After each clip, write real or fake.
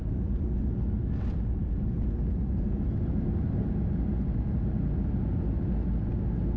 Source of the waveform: real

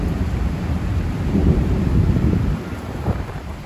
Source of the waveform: fake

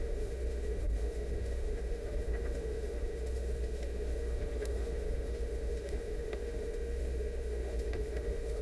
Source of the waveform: fake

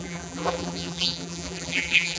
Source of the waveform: fake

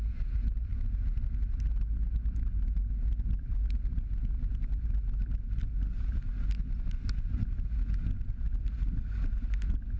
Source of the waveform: real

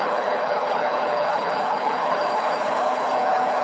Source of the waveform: fake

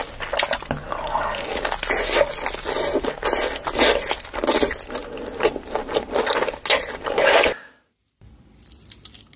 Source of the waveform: real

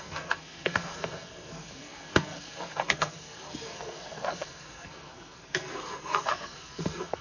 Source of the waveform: fake